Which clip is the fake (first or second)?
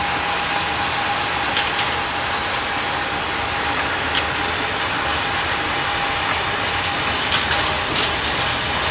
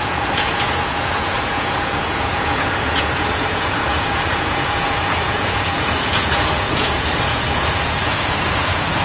second